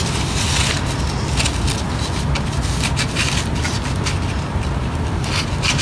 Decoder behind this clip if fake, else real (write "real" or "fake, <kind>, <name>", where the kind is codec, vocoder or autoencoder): real